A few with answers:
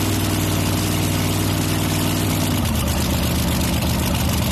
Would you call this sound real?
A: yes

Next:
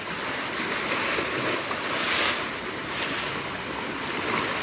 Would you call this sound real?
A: yes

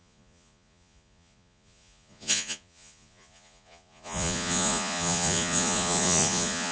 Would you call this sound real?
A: no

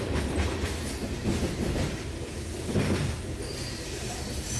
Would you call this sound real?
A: yes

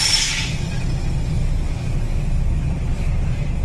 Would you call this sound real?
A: yes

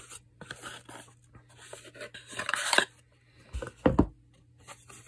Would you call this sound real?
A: yes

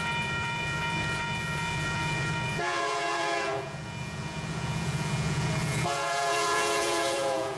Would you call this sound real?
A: no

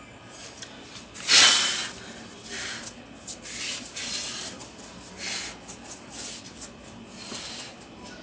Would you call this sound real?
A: yes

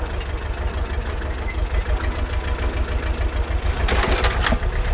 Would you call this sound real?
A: yes